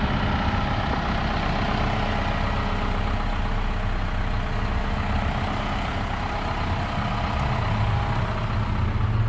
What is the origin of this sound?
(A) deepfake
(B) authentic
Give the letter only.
B